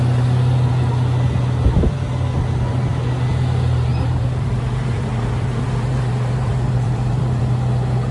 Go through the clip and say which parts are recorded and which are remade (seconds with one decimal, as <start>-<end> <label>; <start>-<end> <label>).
0.0-3.9 recorded; 3.9-7.4 remade; 7.4-8.1 recorded